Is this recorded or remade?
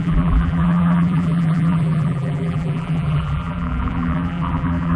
remade